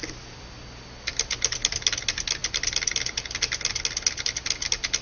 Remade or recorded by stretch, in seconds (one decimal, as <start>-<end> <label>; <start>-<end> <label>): 0.0-5.0 recorded